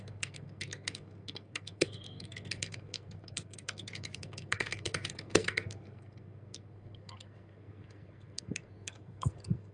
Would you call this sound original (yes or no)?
no